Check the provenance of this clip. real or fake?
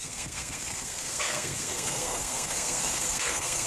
fake